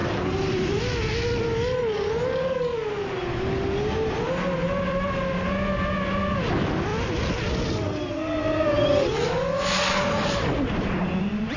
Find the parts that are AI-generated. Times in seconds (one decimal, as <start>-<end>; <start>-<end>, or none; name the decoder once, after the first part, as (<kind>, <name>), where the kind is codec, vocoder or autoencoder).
0.0-0.8 (vocoder, BigVGAN v2)